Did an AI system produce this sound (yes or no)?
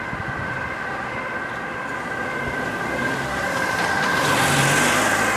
no